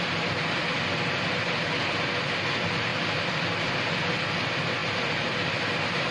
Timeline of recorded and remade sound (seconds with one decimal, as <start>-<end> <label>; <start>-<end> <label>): 0.0-6.1 recorded